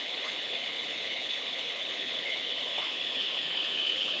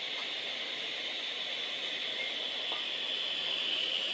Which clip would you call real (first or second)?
second